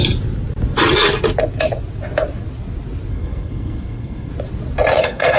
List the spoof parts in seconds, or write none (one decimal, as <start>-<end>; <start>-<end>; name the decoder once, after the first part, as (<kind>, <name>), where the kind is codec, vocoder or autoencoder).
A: 3.1-4.3 (codec, SNAC); 5.0-5.4